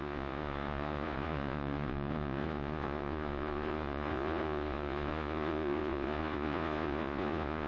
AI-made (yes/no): yes